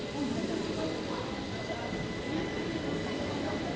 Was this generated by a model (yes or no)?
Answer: no